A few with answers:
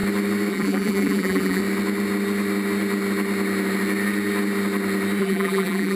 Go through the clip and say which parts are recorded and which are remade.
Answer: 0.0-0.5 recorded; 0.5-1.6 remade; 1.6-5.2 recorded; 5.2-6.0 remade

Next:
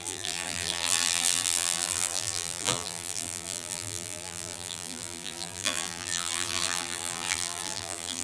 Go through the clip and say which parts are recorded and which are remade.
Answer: 0.0-8.2 remade

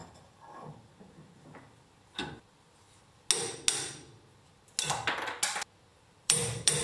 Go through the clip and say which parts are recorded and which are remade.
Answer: 0.0-0.7 remade; 0.7-5.9 recorded; 5.9-6.8 remade

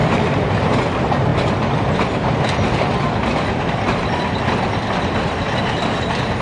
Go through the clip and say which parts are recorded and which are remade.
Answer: 0.0-0.5 remade; 0.5-1.3 recorded; 1.3-3.6 remade; 3.6-6.4 recorded

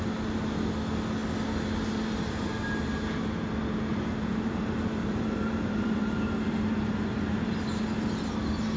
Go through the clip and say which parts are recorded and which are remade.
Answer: 0.0-3.9 recorded; 3.9-7.5 remade; 7.5-8.8 recorded